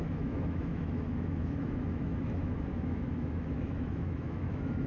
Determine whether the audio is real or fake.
fake